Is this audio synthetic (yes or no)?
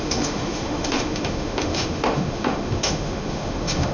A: yes